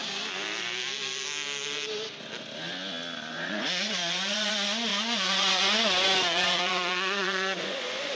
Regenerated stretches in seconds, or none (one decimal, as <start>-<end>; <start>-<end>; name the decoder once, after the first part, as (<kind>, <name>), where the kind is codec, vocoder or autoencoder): 3.3-4.5 (vocoder, Vocos); 4.9-8.1